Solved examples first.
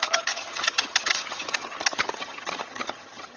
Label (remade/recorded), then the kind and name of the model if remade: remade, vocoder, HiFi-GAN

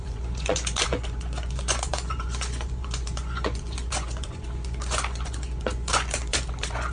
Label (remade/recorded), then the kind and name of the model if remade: remade, vocoder, Vocos